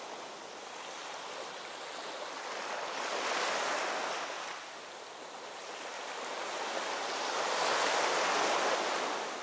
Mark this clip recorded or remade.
recorded